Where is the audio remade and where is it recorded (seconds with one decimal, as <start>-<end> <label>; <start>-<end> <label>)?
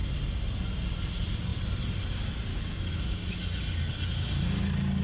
0.0-2.5 recorded; 2.5-3.3 remade; 3.3-5.0 recorded